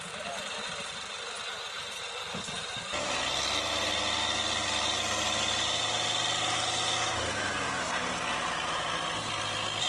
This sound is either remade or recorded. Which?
recorded